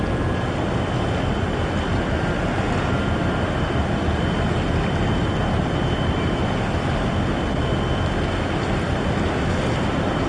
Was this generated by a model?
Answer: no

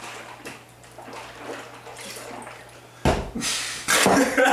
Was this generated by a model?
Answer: no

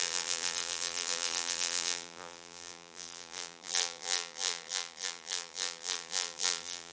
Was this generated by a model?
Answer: yes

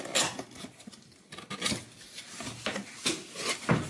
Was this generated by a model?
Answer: no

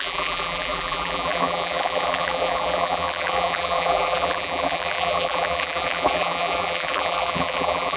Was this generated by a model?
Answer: yes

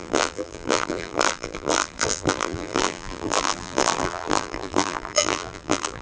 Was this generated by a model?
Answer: yes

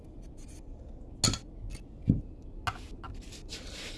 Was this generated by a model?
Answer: no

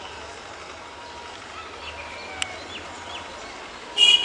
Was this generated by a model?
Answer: no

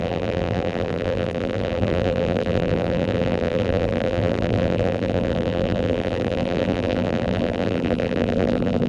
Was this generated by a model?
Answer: yes